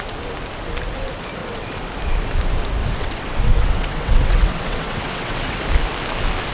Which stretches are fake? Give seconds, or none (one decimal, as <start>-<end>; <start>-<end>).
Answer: 1.4-1.9; 2.8-5.6